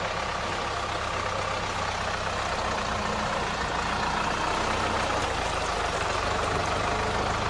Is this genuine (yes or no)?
yes